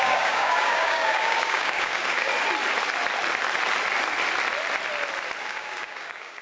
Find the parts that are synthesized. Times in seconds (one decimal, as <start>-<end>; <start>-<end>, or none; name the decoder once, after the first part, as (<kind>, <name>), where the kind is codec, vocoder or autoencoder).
0.0-2.3 (codec, DAC); 5.4-6.4